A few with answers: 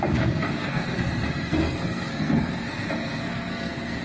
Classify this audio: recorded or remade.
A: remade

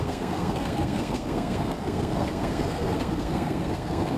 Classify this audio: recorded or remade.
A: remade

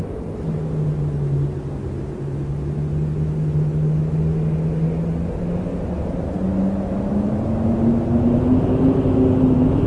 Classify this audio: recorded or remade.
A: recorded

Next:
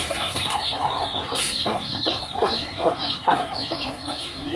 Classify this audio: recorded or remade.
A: remade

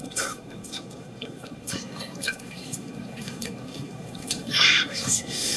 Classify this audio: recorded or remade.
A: remade